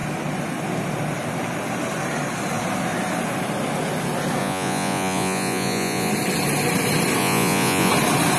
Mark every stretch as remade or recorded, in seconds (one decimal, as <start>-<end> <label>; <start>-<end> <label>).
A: 0.0-4.4 recorded; 4.4-6.1 remade; 6.1-7.2 recorded; 7.2-7.9 remade; 7.9-8.4 recorded